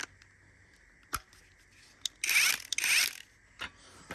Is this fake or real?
real